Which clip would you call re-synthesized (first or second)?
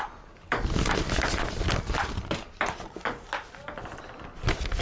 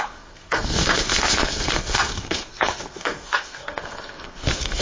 second